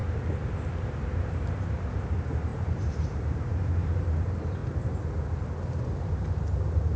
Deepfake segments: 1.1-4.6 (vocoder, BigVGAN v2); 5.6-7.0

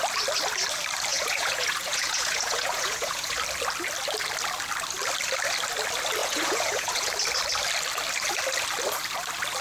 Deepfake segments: 1.1-3.4 (vocoder, Vocos); 6.2-7.1

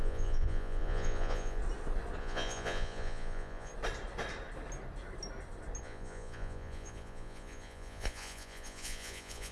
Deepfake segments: 0.0-1.6 (vocoder, Vocos); 2.2-3.7; 5.8-9.5

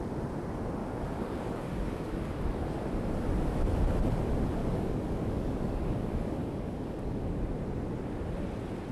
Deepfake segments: 0.8-2.4 (codec, DAC); 4.6-7.4

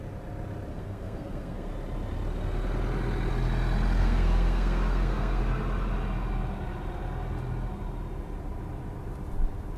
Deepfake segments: 0.7-1.7 (codec, SNAC); 4.0-5.4

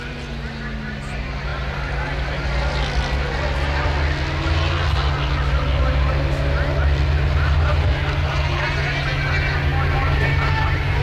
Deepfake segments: none

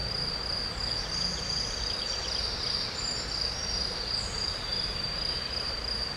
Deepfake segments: 3.6-5.8 (vocoder, BigVGAN v2)

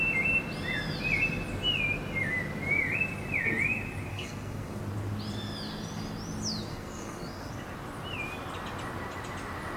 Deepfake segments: 4.1-4.8 (codec, SNAC); 6.7-7.5